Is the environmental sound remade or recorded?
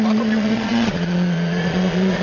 remade